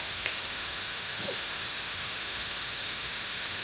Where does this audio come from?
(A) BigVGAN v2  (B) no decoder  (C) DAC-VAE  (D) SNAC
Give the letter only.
C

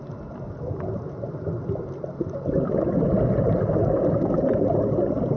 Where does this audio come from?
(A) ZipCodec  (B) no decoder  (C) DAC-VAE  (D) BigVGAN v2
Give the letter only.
B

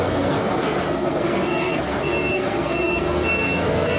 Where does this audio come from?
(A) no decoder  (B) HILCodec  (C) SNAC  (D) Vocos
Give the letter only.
C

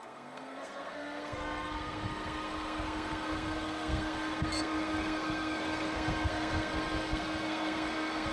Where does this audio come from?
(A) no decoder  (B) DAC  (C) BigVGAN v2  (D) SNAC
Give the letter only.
D